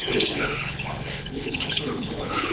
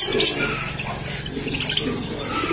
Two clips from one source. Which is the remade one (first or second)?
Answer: first